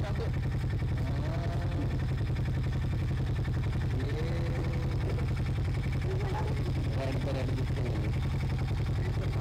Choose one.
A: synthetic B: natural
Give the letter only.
B